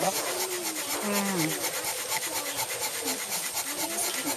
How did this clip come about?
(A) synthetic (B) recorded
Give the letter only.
B